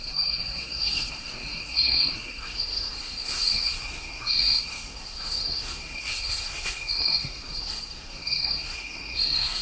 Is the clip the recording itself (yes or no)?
no